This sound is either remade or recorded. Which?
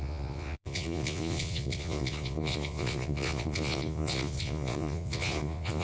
remade